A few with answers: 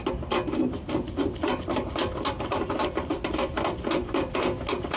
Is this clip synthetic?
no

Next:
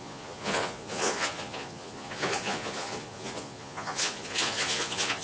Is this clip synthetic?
yes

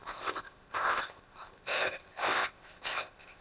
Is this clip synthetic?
yes